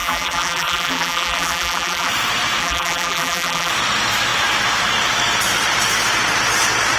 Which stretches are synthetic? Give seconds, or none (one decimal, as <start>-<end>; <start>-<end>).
0.0-2.1; 2.6-3.7